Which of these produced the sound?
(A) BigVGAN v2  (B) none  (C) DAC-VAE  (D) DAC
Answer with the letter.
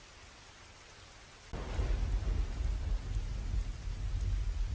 B